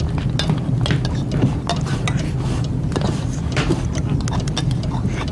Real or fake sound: real